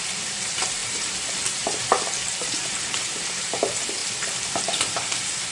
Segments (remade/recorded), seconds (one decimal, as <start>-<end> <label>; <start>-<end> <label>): 0.0-4.0 remade; 4.0-4.6 recorded; 4.6-5.5 remade